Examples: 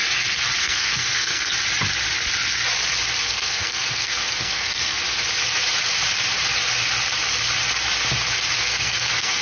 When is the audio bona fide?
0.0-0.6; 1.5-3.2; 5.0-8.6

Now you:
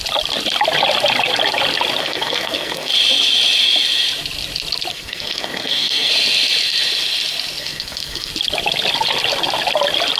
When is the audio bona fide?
0.0-2.0; 2.9-4.9; 6.1-7.6; 8.3-10.2

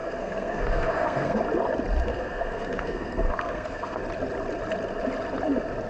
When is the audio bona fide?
1.4-2.1; 4.0-5.9

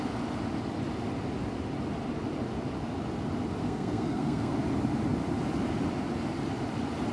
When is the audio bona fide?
0.0-3.6; 4.5-7.1

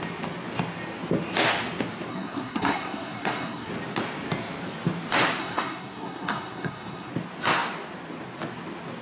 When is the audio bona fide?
0.0-2.1; 3.7-5.4; 7.1-9.0

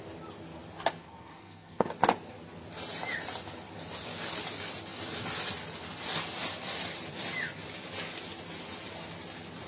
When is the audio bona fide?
0.0-1.0; 1.9-9.7

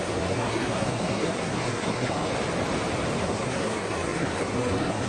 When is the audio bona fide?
2.3-3.2